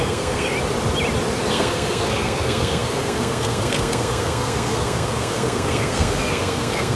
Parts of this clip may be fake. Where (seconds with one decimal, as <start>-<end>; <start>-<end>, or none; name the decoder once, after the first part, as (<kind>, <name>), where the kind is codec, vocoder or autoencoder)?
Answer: 0.0-0.5 (codec, SNAC); 1.5-7.0